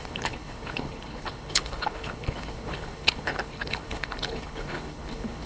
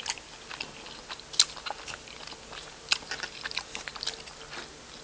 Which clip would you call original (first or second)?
second